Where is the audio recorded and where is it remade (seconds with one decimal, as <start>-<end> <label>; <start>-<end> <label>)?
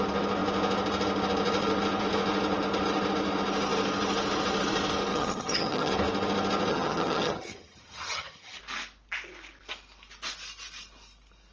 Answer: 0.0-5.1 recorded; 5.1-5.9 remade; 5.9-6.7 recorded; 6.7-8.6 remade; 8.6-11.5 recorded